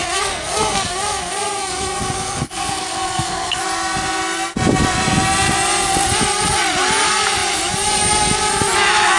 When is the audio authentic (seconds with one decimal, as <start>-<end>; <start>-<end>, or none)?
3.6-9.2